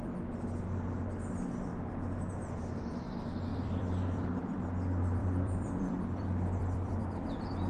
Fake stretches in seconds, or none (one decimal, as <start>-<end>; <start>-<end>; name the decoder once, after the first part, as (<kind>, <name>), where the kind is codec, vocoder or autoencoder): 3.5-4.7 (vocoder, BigVGAN v2); 5.2-7.1

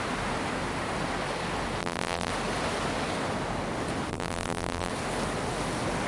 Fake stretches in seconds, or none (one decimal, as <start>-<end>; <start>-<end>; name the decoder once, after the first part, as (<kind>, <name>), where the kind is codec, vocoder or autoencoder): 1.8-2.3 (vocoder, BigVGAN v2); 4.1-4.9

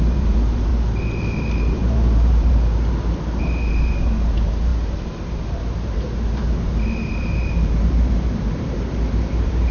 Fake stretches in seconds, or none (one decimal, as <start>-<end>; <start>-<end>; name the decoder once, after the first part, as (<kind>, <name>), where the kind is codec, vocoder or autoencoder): 0.0-0.7 (vocoder, BigVGAN v2); 1.2-9.7

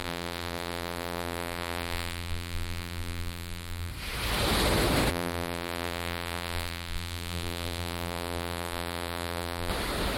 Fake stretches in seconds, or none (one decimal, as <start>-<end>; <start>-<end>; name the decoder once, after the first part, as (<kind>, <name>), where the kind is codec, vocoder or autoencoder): 0.0-3.9 (vocoder, BigVGAN v2); 5.1-9.7